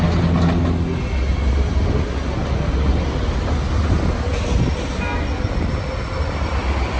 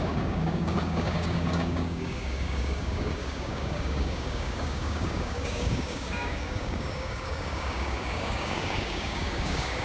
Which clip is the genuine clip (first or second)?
first